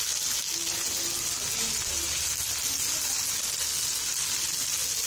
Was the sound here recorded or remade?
recorded